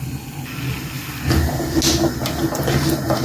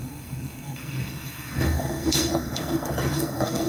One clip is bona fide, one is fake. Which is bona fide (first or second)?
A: first